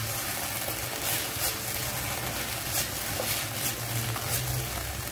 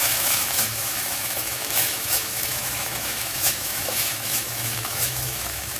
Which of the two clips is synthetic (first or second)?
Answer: second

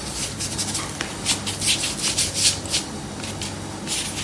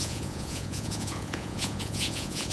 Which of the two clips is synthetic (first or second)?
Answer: second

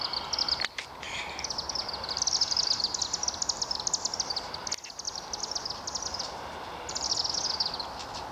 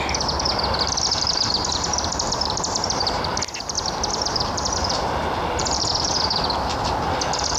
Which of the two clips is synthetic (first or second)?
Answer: second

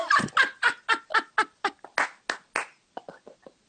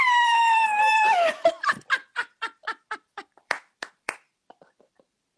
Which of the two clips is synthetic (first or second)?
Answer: second